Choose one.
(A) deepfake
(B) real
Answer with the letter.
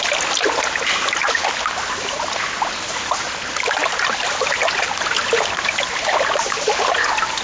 B